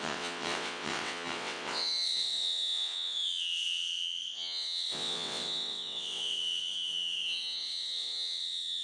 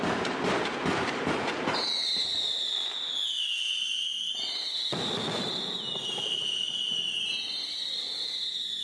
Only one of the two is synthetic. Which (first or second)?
first